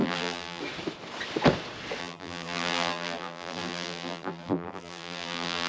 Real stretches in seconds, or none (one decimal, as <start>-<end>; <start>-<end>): 0.6-2.0